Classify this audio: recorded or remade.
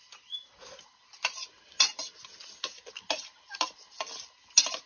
recorded